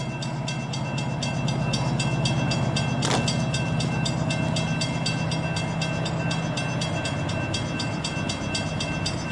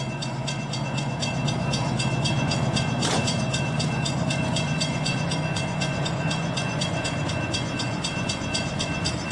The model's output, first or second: second